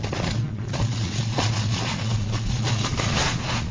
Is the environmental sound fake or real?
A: fake